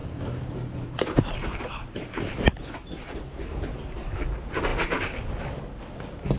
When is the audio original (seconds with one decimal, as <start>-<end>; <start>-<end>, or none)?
0.0-1.4; 2.3-2.8; 3.8-6.4